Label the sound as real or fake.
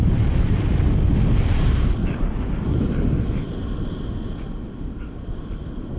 fake